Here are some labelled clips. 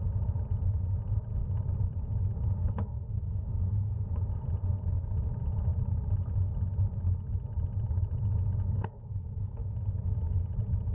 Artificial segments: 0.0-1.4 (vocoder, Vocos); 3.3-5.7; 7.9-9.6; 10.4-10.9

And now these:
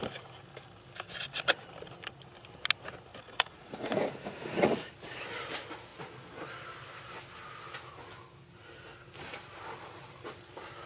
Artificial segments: 3.1-4.9 (vocoder, Vocos)

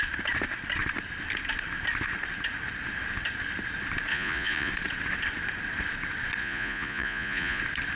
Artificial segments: 4.1-4.7 (vocoder, Vocos); 6.4-7.6

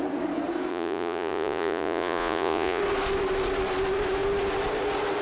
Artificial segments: 0.7-2.8 (vocoder, Vocos)

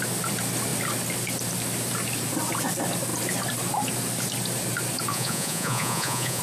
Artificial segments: 5.1-6.4 (vocoder, Vocos)

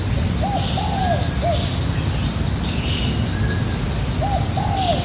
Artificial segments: none

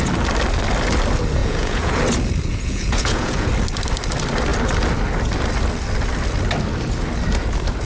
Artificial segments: 1.4-2.0 (vocoder, Vocos); 2.5-3.5